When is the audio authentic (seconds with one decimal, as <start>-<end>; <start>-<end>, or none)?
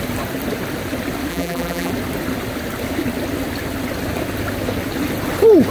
0.0-1.3; 1.9-5.7